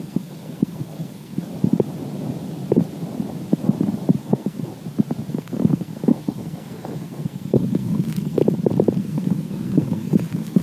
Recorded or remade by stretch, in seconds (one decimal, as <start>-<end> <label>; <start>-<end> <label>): 0.0-1.5 remade; 1.5-4.2 recorded; 4.2-4.7 remade; 4.7-5.3 recorded; 5.3-8.4 remade; 8.4-9.0 recorded; 9.0-10.6 remade